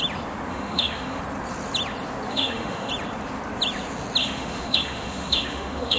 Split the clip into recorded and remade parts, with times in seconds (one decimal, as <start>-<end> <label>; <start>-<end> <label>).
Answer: 0.0-0.5 recorded; 0.5-1.2 remade; 1.2-2.3 recorded; 2.3-2.9 remade; 2.9-4.2 recorded; 4.2-6.0 remade